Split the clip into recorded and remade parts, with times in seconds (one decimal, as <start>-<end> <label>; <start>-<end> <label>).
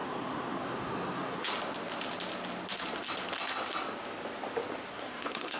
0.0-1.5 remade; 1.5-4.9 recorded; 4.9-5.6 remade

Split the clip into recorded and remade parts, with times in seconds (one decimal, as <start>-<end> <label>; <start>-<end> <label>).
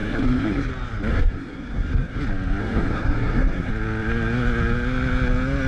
0.0-0.7 remade; 0.7-1.1 recorded; 1.1-2.2 remade; 2.2-2.6 recorded; 2.6-3.7 remade; 3.7-5.7 recorded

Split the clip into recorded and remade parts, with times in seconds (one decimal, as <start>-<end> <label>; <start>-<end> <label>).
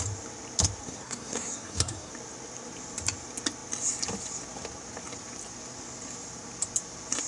0.0-0.8 recorded; 0.8-2.1 remade; 2.1-7.3 recorded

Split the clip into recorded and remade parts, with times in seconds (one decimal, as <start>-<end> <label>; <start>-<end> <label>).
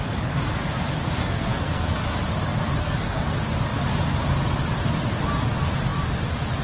0.0-1.2 recorded; 1.2-2.0 remade; 2.0-2.8 recorded; 2.8-3.3 remade; 3.3-6.6 recorded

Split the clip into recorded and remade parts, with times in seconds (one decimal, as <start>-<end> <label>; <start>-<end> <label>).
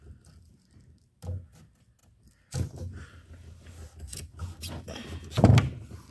0.0-6.1 recorded